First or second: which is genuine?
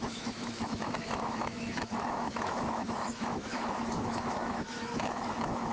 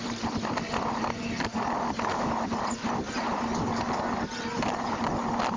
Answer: second